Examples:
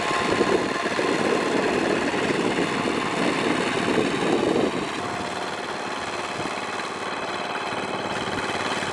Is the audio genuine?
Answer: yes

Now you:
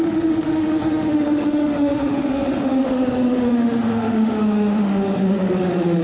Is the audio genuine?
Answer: no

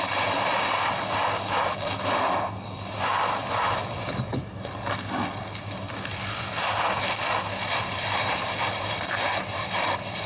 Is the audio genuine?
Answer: yes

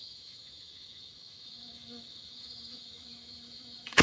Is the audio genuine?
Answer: no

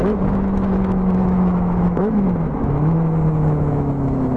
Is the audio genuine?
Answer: no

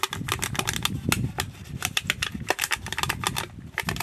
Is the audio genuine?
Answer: yes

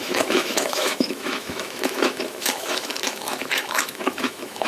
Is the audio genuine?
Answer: no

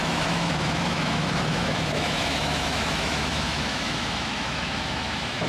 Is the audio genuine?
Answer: no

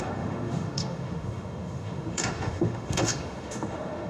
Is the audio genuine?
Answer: no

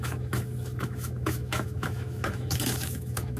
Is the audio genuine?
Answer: no